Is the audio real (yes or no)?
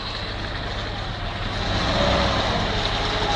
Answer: yes